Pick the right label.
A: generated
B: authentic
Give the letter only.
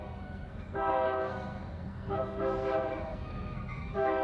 A